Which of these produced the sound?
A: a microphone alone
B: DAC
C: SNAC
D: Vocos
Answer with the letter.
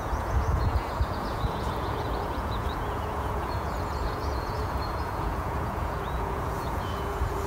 D